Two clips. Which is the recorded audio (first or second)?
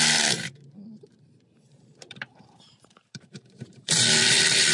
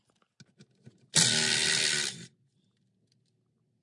second